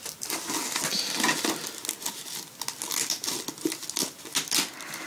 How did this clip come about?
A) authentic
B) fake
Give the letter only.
A